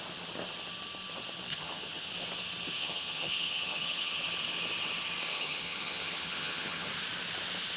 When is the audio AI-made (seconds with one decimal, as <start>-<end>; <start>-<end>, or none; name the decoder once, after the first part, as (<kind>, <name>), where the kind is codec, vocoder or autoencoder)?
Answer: 1.5-2.1 (vocoder, HiFi-GAN); 2.8-4.2; 5.3-6.9